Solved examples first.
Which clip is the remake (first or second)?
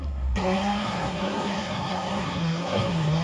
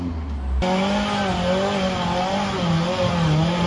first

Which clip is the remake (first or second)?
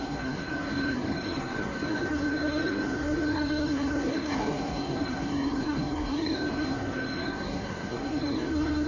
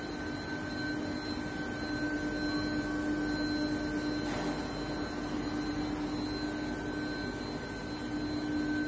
first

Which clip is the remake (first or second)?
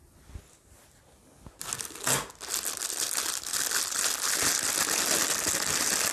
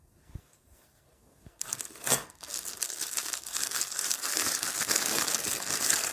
second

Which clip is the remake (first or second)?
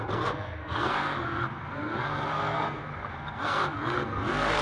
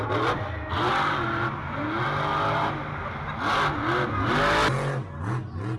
first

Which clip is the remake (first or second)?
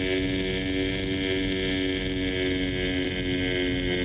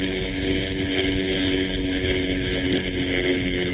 second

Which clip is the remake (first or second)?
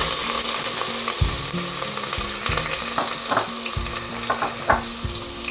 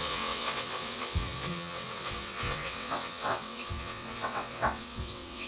second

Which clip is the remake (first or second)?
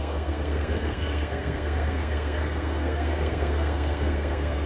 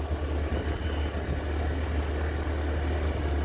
first